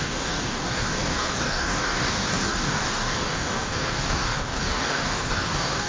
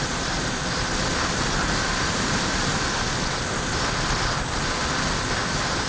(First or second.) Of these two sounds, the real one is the second